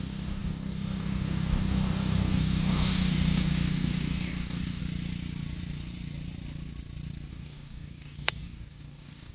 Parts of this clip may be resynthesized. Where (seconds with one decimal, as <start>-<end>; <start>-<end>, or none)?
0.0-4.8; 7.3-9.3